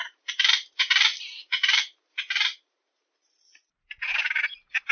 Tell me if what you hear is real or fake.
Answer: fake